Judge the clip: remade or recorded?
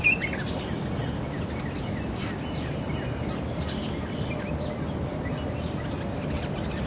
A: recorded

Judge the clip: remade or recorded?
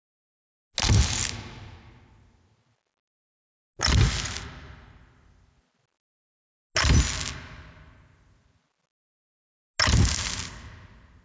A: recorded